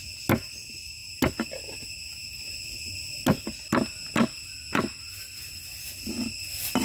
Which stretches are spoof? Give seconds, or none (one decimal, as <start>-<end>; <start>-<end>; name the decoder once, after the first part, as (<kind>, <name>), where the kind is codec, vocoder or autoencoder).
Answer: none